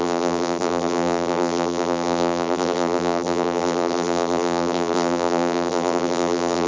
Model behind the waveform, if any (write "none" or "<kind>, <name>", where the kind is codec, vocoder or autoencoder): vocoder, BigVGAN v2